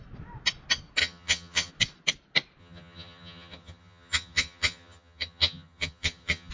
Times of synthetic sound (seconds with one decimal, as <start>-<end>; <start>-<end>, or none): 1.0-1.7; 2.6-6.5